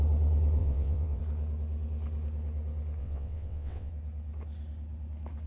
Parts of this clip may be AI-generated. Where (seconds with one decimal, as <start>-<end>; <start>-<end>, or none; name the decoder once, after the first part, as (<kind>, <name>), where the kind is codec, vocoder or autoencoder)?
0.6-1.2 (vocoder, WaveNeXt); 3.0-3.9